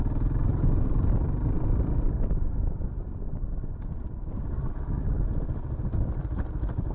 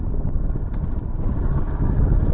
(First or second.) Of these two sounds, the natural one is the first